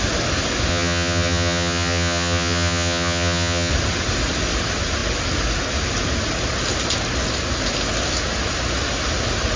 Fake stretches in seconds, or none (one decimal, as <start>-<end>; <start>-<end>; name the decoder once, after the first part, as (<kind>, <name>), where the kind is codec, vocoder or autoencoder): 0.7-3.7 (vocoder, HiFi-GAN)